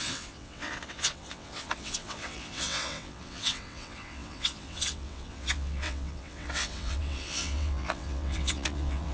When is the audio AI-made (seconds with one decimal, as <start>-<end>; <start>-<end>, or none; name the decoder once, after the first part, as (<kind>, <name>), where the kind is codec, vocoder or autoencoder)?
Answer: 0.0-9.1 (vocoder, WaveNeXt)